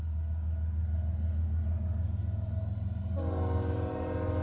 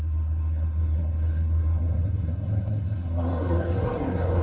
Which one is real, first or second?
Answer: first